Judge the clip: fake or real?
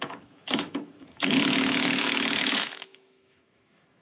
fake